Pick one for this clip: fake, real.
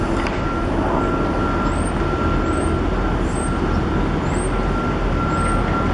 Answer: real